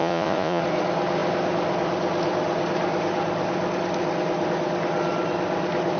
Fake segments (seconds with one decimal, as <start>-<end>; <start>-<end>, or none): 0.0-0.6